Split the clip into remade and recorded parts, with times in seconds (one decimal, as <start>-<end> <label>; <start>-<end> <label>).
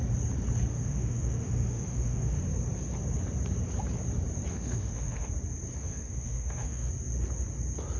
0.0-0.7 recorded; 0.7-2.4 remade; 2.4-4.5 recorded; 4.5-5.3 remade; 5.3-5.8 recorded; 5.8-6.9 remade; 6.9-8.0 recorded